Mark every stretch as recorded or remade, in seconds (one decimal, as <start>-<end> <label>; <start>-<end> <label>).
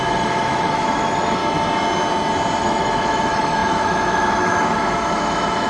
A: 0.0-1.4 remade; 1.4-2.6 recorded; 2.6-5.7 remade